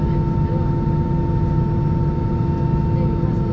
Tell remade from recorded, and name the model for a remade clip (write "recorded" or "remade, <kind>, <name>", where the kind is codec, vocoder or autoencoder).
recorded